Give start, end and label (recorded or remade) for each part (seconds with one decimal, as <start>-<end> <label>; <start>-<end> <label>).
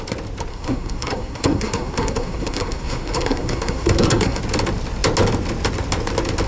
0.0-0.5 recorded; 0.5-4.4 remade; 4.4-6.5 recorded